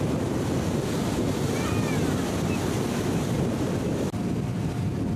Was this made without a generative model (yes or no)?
yes